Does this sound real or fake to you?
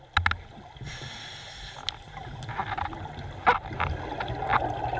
real